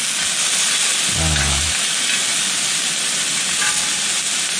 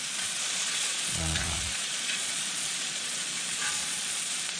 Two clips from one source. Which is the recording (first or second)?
first